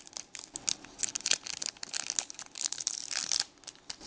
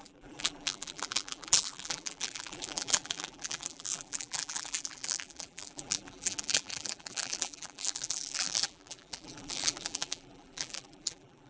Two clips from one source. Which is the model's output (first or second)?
second